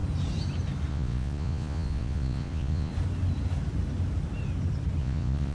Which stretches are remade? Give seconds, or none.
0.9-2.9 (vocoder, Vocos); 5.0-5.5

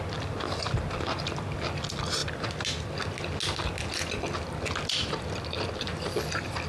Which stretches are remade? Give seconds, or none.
none

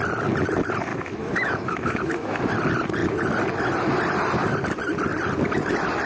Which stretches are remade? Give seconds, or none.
0.9-2.4 (autoencoder, DAC-VAE)

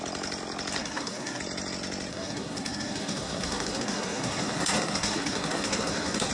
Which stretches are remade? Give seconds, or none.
0.8-1.4 (codec, SNAC); 2.1-6.3

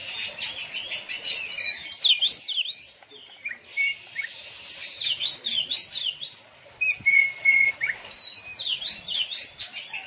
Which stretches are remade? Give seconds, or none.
7.1-7.7 (vocoder, HiFi-GAN)

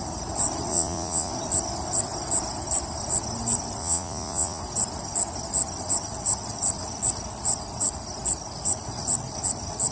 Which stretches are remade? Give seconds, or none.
0.7-1.3 (vocoder, Vocos); 3.8-4.6

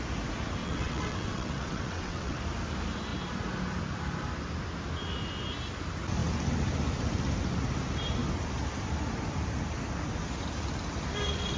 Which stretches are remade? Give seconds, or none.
0.6-2.4 (vocoder, WaveNeXt)